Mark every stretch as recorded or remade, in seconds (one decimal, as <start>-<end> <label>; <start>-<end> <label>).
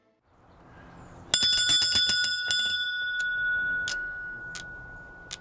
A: 0.0-3.9 recorded; 3.9-4.4 remade; 4.4-5.4 recorded